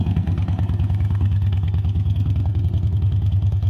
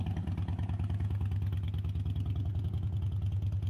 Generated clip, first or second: first